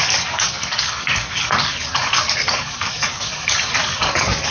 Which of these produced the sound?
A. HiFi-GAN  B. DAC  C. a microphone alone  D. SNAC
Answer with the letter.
B